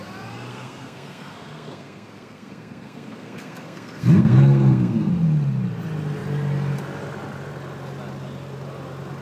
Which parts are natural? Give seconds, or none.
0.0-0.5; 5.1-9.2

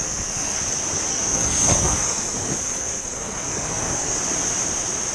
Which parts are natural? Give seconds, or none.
0.6-1.1; 4.2-5.1

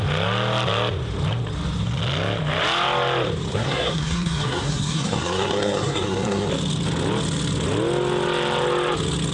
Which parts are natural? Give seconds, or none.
0.0-3.5; 6.5-9.3

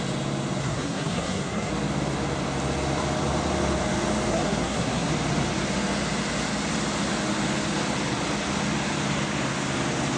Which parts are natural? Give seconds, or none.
0.0-0.6; 1.7-4.3; 5.1-10.2